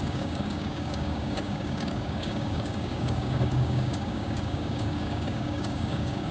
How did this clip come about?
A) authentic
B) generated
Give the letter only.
B